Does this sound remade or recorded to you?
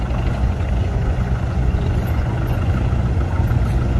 remade